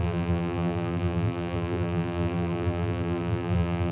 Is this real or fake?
fake